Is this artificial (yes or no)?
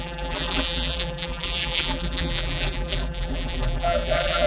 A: yes